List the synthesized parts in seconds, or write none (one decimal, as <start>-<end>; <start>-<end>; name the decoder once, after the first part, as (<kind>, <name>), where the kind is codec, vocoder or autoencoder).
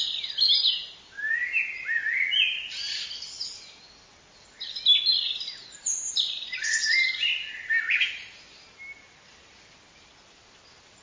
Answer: none